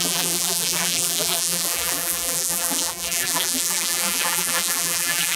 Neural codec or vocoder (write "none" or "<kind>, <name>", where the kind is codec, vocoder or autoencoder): vocoder, BigVGAN v2